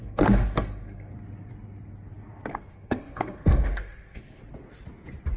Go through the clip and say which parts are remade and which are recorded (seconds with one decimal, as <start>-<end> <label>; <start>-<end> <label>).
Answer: 0.0-1.1 remade; 1.1-2.5 recorded; 2.5-4.4 remade; 4.4-5.4 recorded